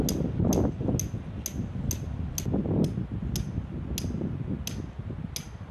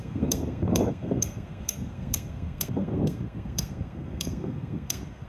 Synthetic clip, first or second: second